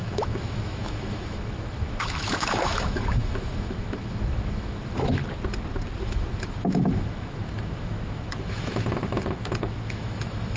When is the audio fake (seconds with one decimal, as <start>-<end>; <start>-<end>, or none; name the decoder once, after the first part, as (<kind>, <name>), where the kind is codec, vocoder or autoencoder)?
0.0-5.2 (autoencoder, DAC-VAE); 6.0-10.6